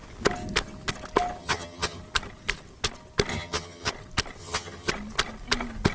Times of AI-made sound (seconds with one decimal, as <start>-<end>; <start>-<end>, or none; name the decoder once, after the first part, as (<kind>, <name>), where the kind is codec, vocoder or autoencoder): 1.4-2.0 (vocoder, HiFi-GAN); 3.3-3.9; 4.4-4.9